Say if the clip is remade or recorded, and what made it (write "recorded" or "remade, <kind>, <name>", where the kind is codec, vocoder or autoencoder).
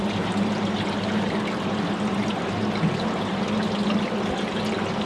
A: recorded